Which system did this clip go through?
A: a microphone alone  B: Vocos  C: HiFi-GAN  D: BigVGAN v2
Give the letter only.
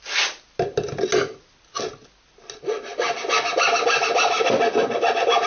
A